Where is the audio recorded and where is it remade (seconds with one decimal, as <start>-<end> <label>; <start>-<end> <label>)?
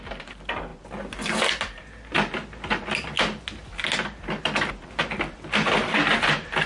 0.0-6.7 recorded